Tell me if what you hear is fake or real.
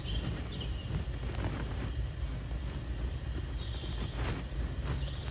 real